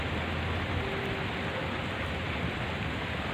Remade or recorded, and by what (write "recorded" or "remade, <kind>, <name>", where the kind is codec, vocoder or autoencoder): recorded